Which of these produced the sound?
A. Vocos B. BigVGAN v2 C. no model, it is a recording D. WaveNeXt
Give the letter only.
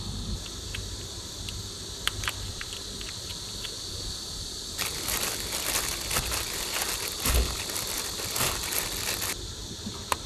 C